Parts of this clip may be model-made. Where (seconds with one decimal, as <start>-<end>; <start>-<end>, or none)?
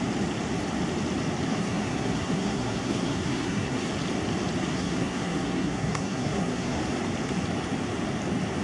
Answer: 1.5-3.9; 4.7-6.8